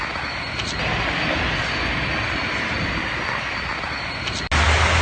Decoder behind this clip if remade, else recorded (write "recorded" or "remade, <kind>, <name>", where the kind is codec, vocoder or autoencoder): recorded